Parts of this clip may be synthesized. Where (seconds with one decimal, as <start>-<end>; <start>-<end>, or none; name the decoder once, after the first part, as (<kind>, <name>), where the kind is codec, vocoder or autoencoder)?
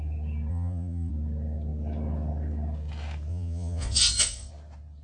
0.5-1.1 (vocoder, Vocos); 3.3-4.5